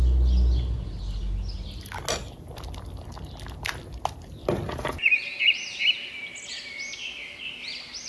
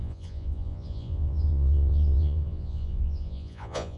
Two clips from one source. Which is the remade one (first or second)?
second